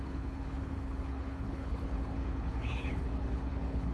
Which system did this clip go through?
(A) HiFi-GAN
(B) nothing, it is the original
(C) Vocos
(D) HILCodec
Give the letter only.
D